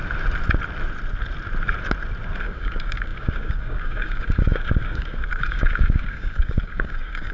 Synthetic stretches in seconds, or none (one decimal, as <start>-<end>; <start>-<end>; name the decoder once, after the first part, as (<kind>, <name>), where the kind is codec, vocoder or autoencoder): 2.4-7.3 (codec, DAC)